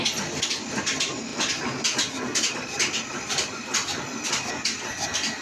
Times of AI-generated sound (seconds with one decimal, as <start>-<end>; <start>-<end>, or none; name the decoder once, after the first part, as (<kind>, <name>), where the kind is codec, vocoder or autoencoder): none